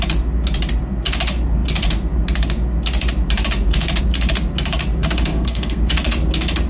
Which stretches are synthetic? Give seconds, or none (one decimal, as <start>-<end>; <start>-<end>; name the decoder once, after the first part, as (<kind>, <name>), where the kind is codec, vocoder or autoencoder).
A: 5.0-5.8 (codec, SNAC)